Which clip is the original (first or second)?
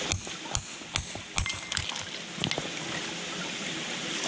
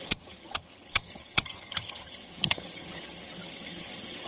first